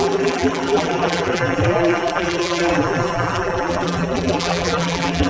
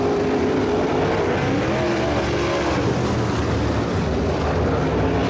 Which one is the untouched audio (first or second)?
second